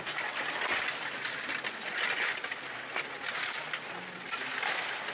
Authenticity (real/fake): real